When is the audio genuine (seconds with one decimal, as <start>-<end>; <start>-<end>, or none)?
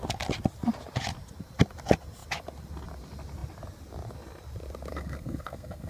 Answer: 0.0-4.9